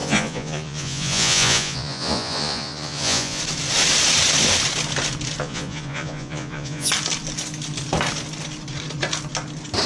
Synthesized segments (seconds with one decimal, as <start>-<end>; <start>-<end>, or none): 0.0-3.4; 5.4-6.9